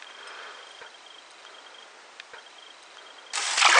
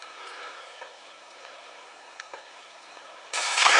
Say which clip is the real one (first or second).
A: first